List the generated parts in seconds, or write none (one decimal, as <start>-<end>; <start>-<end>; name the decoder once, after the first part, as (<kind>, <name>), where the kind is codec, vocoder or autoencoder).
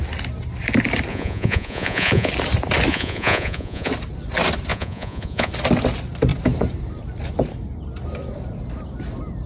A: 1.1-2.3 (vocoder, Vocos); 2.9-3.9; 4.7-5.5